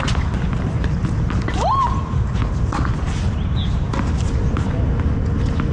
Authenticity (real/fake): real